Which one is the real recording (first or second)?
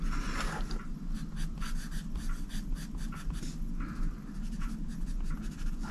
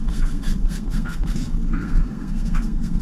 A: first